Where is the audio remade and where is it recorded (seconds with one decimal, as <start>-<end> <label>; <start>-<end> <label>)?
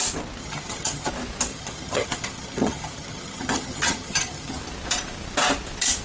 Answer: 0.0-0.4 recorded; 0.4-1.1 remade; 1.1-1.5 recorded; 1.5-4.6 remade; 4.6-6.0 recorded